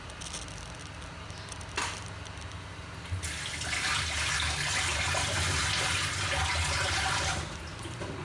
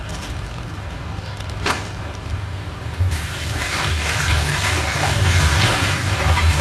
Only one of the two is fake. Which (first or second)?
second